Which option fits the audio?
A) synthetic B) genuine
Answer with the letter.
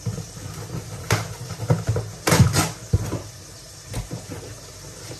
B